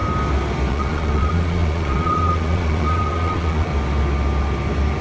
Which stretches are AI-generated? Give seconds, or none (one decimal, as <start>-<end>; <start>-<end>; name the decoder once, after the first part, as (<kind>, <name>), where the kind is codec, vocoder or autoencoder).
0.7-3.7 (vocoder, Vocos)